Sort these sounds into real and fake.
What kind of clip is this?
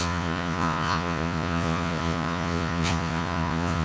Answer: fake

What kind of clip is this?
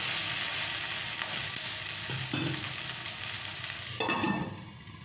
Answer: real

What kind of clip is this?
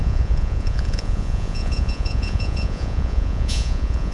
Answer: fake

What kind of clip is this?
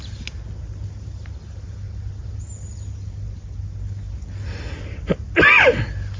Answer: real